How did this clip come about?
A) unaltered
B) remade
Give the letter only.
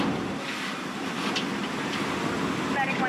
A